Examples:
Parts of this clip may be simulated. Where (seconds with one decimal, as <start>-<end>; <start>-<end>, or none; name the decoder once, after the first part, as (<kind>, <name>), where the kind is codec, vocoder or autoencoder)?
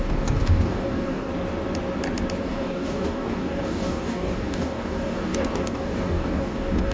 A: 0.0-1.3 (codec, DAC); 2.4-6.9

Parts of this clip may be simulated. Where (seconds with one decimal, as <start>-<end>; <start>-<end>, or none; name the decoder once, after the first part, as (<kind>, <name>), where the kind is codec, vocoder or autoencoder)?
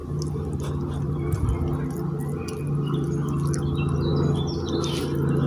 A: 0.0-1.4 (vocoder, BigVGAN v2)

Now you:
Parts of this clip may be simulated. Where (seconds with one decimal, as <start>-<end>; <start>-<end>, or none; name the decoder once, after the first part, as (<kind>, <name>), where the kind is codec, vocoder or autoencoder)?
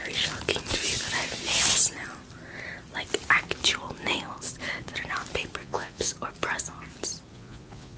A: 5.6-6.1 (vocoder, Vocos); 7.3-8.0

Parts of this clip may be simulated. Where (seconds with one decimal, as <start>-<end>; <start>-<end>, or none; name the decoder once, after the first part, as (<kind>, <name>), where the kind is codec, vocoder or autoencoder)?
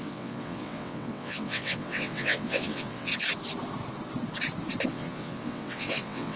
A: 0.0-3.1 (vocoder, WaveNeXt); 4.9-6.4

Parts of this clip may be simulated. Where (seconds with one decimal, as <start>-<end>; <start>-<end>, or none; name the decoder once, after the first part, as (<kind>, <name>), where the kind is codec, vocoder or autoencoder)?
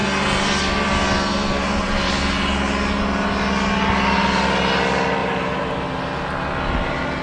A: 5.2-6.1 (vocoder, BigVGAN v2)